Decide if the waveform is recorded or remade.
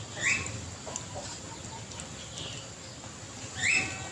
recorded